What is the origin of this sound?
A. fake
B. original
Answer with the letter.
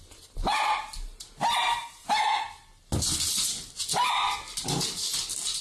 B